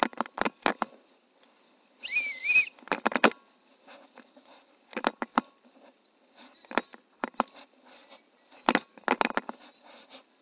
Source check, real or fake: real